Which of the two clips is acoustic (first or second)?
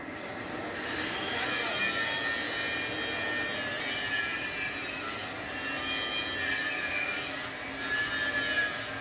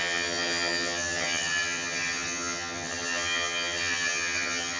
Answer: first